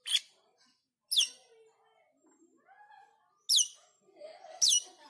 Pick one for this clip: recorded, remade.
recorded